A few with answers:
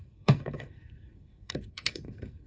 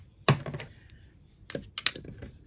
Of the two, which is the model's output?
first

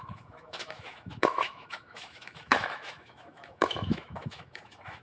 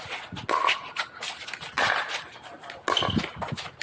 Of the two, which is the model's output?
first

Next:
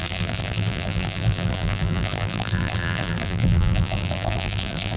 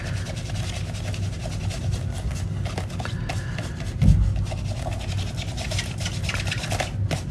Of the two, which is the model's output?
first